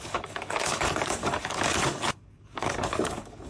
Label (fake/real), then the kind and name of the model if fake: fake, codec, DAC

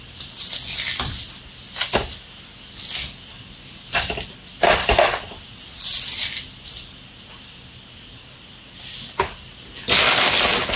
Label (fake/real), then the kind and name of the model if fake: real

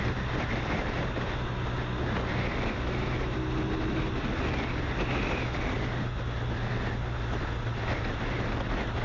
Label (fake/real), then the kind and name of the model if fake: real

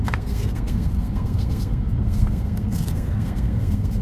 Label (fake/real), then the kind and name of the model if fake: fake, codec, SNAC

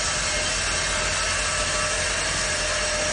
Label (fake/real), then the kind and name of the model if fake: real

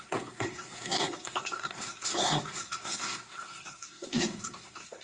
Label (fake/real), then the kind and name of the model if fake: fake, codec, SNAC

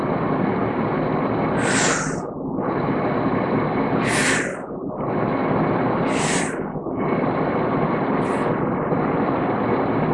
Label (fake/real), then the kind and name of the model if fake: real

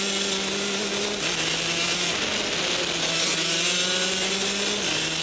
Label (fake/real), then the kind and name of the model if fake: real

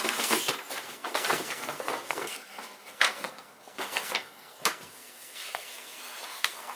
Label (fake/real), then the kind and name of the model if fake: fake, codec, SNAC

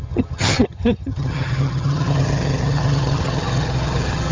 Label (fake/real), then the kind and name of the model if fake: fake, vocoder, HiFi-GAN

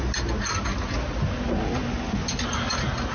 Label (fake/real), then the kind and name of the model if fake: real